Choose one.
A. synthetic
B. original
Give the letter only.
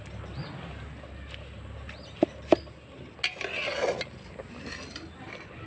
B